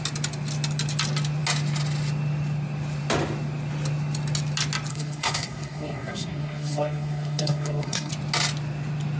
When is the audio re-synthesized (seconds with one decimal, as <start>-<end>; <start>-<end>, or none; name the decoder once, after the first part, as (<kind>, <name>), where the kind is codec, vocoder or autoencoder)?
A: 4.9-8.1 (codec, SNAC)